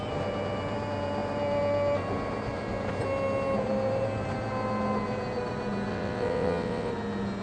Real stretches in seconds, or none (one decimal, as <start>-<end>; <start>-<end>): 0.0-5.9; 6.9-7.4